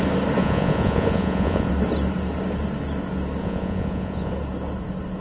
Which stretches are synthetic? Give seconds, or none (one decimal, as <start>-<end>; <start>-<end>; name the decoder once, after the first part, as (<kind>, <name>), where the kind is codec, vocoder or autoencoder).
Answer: 0.4-1.7 (vocoder, Vocos); 3.4-4.3